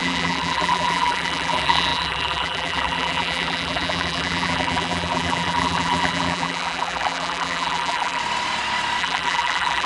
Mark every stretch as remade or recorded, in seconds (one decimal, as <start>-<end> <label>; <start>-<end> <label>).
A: 0.0-8.2 remade; 8.2-9.0 recorded; 9.0-9.9 remade